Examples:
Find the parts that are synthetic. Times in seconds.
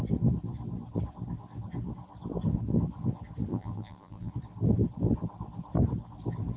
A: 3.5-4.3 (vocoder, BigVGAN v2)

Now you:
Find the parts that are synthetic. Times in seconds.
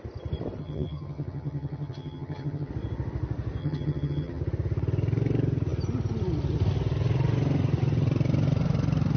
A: 0.6-2.7 (vocoder, HiFi-GAN); 3.6-4.4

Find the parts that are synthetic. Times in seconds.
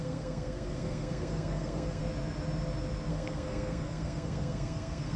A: 0.0-2.0 (codec, SNAC); 3.1-5.2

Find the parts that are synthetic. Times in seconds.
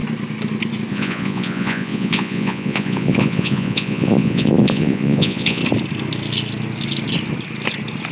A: 0.9-5.6 (vocoder, Vocos)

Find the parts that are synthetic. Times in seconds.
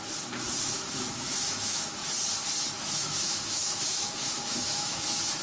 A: 0.6-2.0 (autoencoder, DAC-VAE); 2.7-5.4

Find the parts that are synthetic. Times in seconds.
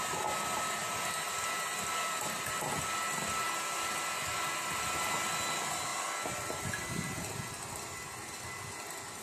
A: none